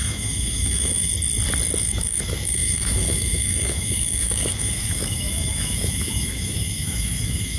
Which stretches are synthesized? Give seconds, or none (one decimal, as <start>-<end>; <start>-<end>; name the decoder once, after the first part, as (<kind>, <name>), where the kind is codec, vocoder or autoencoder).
0.0-1.1 (autoencoder, DAC-VAE); 1.8-7.6